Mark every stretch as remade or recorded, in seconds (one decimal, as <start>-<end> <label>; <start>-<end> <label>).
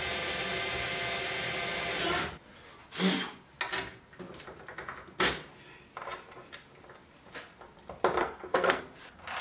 0.0-8.2 recorded; 8.2-8.8 remade; 8.8-9.4 recorded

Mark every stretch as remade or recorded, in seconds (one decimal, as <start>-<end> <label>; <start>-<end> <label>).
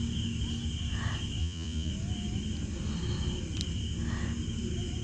0.0-1.4 recorded; 1.4-1.9 remade; 1.9-5.0 recorded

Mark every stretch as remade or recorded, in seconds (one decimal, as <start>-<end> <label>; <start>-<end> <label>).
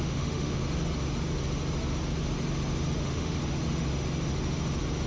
0.0-0.6 remade; 0.6-3.0 recorded; 3.0-3.4 remade; 3.4-5.1 recorded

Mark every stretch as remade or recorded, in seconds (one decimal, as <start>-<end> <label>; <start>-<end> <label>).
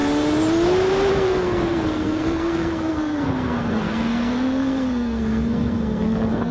0.0-1.1 recorded; 1.1-6.5 remade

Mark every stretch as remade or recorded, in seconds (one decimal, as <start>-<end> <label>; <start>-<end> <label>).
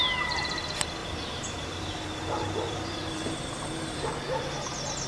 0.0-1.0 recorded; 1.0-4.1 remade; 4.1-5.1 recorded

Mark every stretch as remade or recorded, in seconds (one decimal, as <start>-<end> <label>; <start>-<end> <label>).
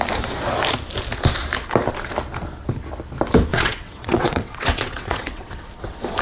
0.0-3.5 recorded; 3.5-5.7 remade; 5.7-6.2 recorded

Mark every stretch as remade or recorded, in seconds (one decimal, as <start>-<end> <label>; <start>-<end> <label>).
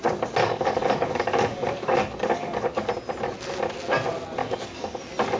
0.0-0.4 recorded; 0.4-2.9 remade; 2.9-4.4 recorded; 4.4-5.0 remade; 5.0-5.4 recorded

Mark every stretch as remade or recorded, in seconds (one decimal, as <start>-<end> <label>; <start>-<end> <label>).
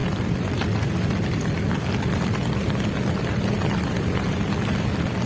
0.0-5.3 recorded